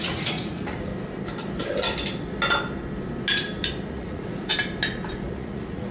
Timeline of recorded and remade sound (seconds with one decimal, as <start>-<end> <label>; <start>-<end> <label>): 0.0-0.9 remade; 0.9-3.9 recorded; 3.9-4.5 remade; 4.5-5.1 recorded; 5.1-5.9 remade

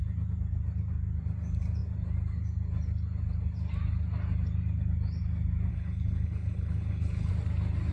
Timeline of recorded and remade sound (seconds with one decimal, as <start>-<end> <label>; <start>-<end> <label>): 0.0-5.7 recorded; 5.7-7.3 remade; 7.3-7.9 recorded

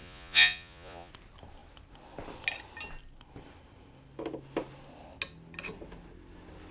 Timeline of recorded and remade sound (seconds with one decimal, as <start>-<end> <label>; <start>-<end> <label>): 0.0-1.1 remade; 1.1-6.7 recorded

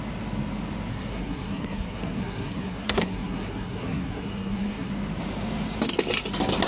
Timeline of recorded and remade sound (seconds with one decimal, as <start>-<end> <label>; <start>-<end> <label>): 0.0-0.9 recorded; 0.9-4.9 remade; 4.9-6.7 recorded

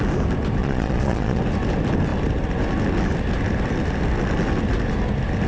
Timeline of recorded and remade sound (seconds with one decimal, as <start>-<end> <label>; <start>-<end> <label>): 0.0-0.6 recorded; 0.6-1.4 remade; 1.4-5.5 recorded